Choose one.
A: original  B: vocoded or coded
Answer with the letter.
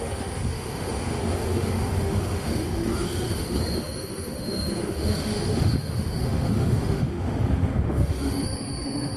B